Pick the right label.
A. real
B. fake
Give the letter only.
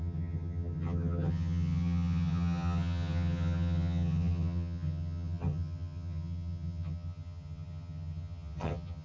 B